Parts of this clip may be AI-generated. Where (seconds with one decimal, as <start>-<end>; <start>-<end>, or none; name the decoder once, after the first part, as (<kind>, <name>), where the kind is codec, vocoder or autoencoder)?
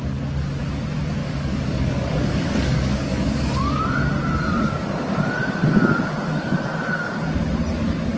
1.2-3.9 (codec, DAC)